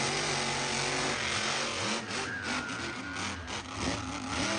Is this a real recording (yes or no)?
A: yes